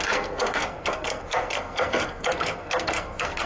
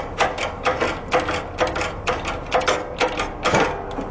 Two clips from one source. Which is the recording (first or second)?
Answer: second